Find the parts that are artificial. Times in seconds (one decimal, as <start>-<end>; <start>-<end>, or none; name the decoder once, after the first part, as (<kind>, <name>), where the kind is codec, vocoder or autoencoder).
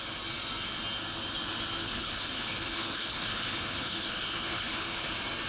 1.8-5.1 (codec, HILCodec)